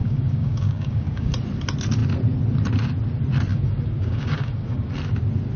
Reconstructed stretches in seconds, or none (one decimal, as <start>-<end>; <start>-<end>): 0.0-1.3; 3.5-4.9